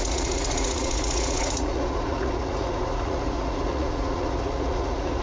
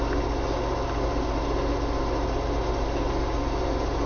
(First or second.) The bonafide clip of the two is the second